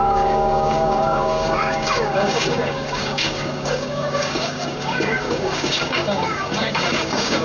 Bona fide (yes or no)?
no